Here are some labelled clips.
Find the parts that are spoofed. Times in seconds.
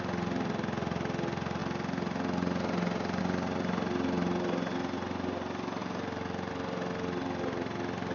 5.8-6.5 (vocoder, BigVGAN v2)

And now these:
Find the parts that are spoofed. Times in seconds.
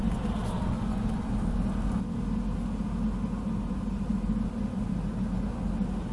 none